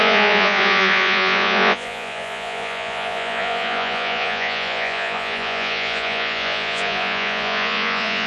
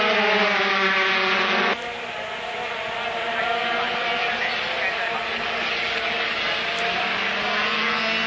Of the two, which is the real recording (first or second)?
second